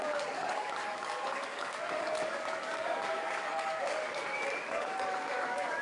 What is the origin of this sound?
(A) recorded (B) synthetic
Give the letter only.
B